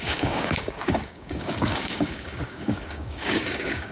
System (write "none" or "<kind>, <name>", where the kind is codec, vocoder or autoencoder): codec, DAC